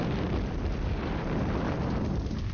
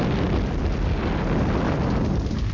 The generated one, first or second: first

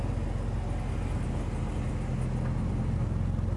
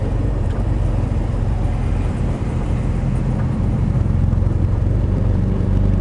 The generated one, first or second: second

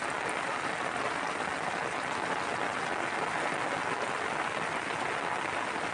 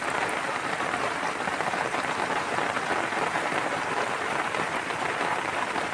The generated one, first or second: second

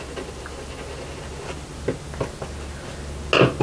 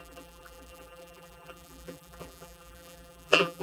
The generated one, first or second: second